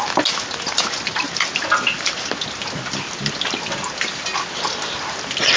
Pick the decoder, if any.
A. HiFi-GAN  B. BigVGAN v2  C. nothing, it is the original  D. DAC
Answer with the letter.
C